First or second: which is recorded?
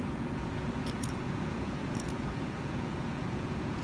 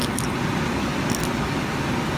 second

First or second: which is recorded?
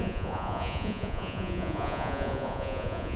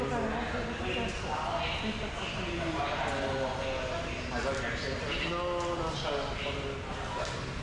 second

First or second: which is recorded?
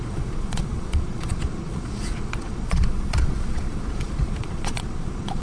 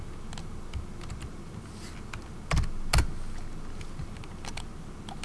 second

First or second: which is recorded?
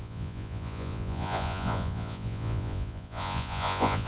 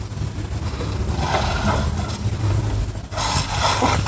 second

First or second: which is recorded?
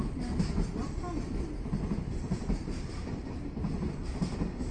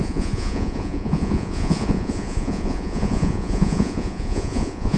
first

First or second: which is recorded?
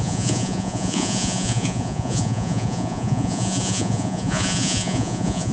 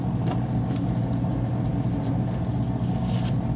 second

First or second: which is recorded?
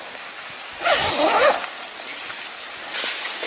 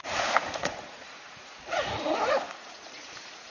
first